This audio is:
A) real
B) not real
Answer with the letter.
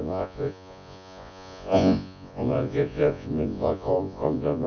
B